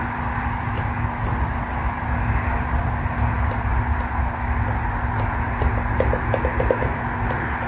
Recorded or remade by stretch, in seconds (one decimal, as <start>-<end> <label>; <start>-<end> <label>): 0.0-7.7 recorded